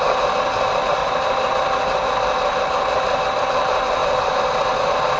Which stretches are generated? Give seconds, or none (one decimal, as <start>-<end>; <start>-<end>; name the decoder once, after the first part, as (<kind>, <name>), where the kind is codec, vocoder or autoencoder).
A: 1.0-3.4 (vocoder, BigVGAN v2); 4.0-5.2